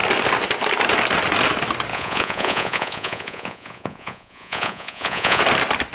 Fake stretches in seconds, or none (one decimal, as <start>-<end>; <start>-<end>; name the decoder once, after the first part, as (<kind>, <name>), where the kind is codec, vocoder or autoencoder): 1.9-5.4 (vocoder, Vocos)